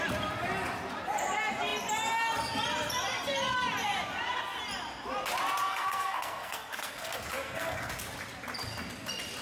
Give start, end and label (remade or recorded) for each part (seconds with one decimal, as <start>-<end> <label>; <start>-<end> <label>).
0.0-5.7 recorded; 5.7-7.9 remade; 7.9-9.4 recorded